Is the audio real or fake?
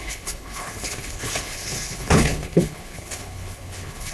fake